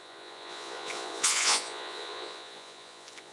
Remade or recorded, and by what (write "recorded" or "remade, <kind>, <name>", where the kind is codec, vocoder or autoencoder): remade, vocoder, Vocos